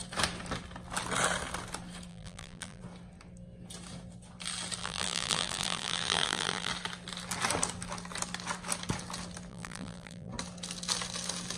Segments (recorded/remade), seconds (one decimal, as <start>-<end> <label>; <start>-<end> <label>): 0.0-2.1 recorded; 2.1-2.8 remade; 2.8-4.8 recorded; 4.8-6.7 remade; 6.7-9.5 recorded; 9.5-10.3 remade; 10.3-11.6 recorded